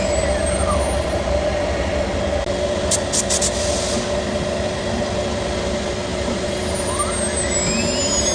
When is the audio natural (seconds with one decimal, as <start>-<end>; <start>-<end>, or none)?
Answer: 0.0-6.1; 6.9-8.3